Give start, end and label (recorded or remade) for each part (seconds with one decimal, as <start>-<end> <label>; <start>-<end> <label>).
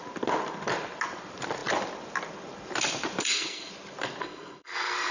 0.0-3.2 recorded; 3.2-3.7 remade; 3.7-4.2 recorded; 4.2-5.1 remade